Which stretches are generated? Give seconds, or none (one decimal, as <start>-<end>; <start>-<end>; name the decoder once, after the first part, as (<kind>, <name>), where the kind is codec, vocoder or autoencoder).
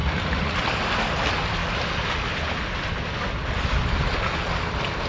0.0-0.6 (vocoder, Vocos)